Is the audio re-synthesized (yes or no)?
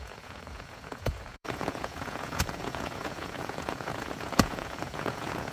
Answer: yes